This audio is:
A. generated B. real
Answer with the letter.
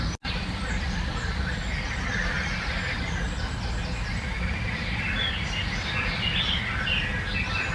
B